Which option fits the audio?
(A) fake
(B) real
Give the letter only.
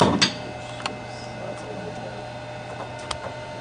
B